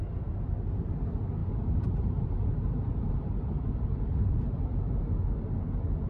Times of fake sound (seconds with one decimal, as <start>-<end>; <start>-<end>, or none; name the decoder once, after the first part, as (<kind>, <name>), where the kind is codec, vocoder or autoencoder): 1.4-5.1 (vocoder, BigVGAN v2)